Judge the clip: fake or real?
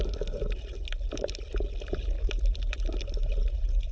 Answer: real